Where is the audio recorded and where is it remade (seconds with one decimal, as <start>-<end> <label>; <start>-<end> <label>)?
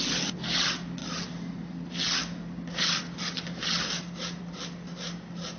0.0-5.6 recorded